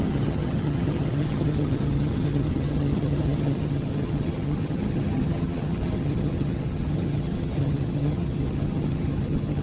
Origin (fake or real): fake